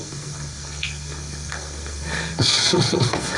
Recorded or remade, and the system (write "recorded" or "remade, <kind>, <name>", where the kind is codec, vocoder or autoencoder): remade, codec, SNAC